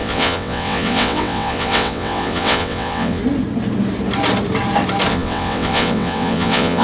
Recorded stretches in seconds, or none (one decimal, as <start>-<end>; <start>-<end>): 3.2-5.1